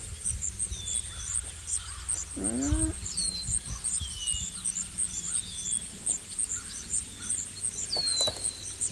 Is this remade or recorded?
recorded